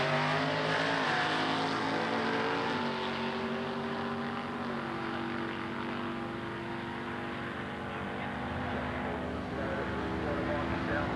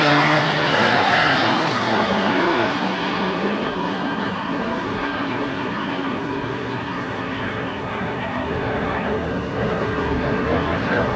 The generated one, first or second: second